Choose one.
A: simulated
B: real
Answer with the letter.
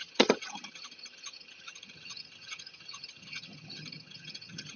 A